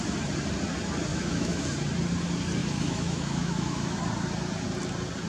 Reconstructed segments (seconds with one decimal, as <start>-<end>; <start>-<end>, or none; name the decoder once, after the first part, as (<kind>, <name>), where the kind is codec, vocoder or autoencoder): 1.1-1.6 (autoencoder, DAC-VAE); 2.6-4.0